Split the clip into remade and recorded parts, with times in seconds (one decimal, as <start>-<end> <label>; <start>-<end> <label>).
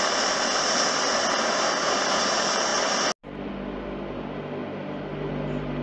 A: 0.0-5.8 recorded